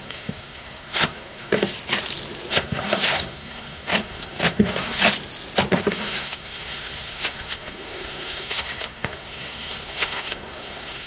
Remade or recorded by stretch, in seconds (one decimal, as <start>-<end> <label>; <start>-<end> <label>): 0.0-1.7 remade; 1.7-2.5 recorded; 2.5-5.0 remade; 5.0-5.7 recorded; 5.7-11.1 remade